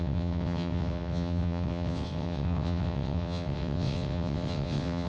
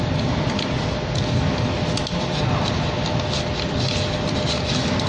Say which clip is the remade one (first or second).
first